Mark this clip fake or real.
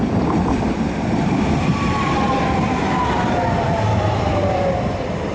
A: fake